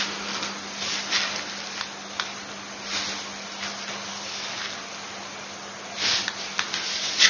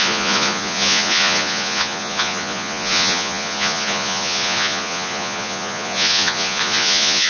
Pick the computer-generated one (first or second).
second